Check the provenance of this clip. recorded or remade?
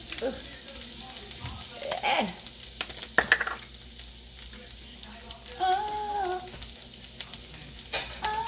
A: recorded